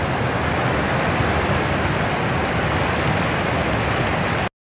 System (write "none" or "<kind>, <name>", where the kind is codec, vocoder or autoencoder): none